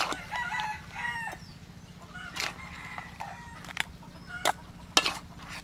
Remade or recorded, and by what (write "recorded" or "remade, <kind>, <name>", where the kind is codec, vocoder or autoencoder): recorded